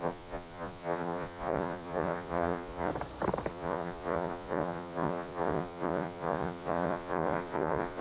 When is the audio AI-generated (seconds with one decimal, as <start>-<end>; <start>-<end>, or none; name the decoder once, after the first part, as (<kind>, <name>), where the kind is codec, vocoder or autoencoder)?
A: 0.0-2.9 (vocoder, Vocos); 3.5-8.0

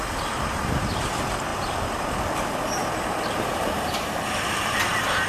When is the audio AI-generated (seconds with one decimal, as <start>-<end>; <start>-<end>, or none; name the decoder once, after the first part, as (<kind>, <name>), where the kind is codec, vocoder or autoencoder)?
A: none

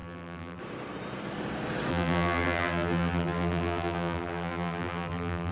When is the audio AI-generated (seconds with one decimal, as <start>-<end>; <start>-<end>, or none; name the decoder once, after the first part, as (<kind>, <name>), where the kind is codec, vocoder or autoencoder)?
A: 0.0-0.6 (vocoder, BigVGAN v2); 1.9-5.5

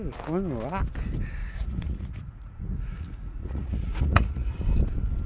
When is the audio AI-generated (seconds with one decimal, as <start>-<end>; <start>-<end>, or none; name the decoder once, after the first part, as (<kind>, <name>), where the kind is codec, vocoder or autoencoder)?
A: 1.4-4.6 (vocoder, Vocos)